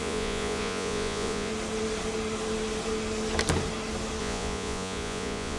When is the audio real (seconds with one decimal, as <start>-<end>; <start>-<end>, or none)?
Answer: 1.5-4.2